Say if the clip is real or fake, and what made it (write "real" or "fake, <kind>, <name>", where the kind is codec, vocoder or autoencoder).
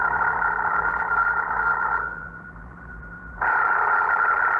fake, vocoder, BigVGAN v2